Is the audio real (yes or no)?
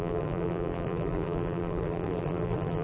no